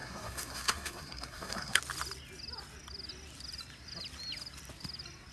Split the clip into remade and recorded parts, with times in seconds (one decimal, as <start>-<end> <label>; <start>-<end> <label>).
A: 0.0-1.8 remade; 1.8-5.3 recorded